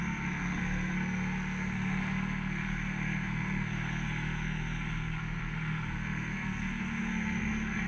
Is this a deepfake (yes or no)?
yes